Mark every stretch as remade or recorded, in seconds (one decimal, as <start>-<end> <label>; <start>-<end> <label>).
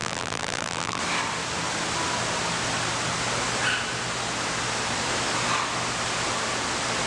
0.0-1.0 remade; 1.0-7.1 recorded